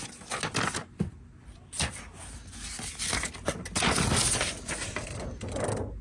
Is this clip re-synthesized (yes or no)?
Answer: no